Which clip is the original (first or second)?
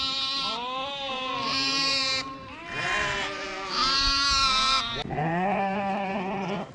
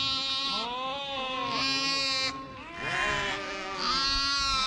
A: second